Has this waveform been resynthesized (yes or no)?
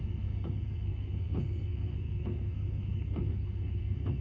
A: yes